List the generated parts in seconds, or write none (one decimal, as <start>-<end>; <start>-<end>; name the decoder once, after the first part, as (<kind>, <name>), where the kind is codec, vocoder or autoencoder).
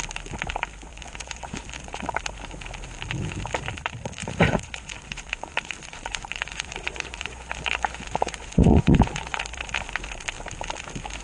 0.9-2.2 (vocoder, Vocos); 4.2-9.4